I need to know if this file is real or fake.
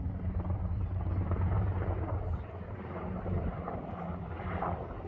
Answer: fake